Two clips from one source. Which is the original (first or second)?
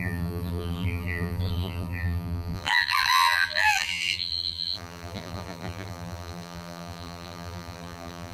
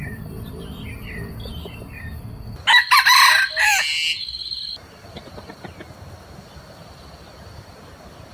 second